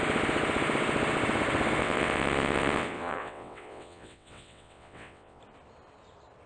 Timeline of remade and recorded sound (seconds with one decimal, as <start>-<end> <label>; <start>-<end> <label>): 0.0-1.8 recorded; 1.8-5.4 remade; 5.4-6.5 recorded